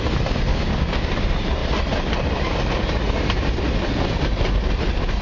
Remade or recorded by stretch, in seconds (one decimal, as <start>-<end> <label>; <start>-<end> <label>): 0.0-0.5 recorded; 0.5-1.1 remade; 1.1-5.2 recorded